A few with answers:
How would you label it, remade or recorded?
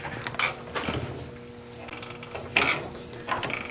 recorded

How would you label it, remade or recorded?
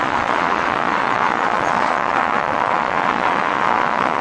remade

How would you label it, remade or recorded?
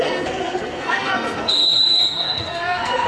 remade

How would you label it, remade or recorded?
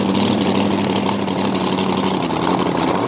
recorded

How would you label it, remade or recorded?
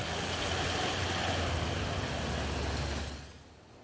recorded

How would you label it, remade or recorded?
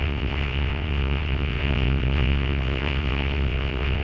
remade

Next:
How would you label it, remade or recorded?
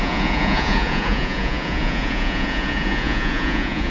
remade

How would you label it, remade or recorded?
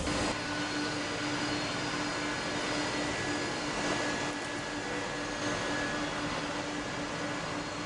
recorded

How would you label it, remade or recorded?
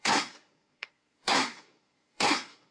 remade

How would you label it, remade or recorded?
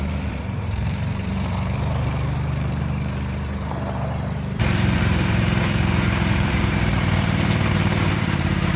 remade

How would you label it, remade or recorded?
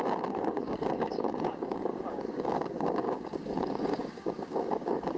remade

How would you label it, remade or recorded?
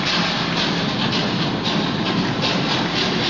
recorded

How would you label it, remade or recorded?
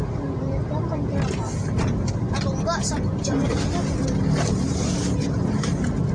recorded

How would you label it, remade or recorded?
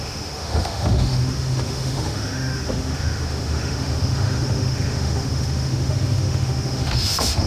remade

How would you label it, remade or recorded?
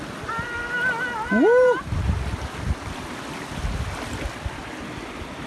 recorded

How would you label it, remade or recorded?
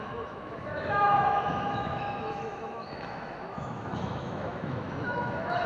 remade